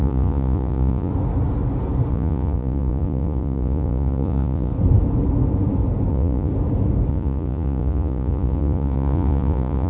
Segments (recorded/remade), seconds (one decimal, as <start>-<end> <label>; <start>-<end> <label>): 0.0-1.1 remade; 1.1-2.1 recorded; 2.1-4.7 remade; 4.7-6.1 recorded; 6.1-6.5 remade; 6.5-7.1 recorded; 7.1-9.9 remade